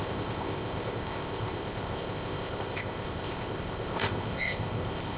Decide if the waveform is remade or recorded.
remade